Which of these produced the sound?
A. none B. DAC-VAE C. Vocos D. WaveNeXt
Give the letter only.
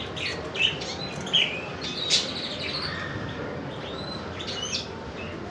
A